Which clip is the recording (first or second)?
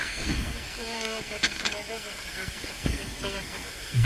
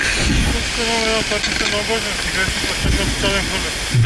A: second